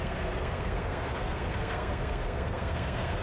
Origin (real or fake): fake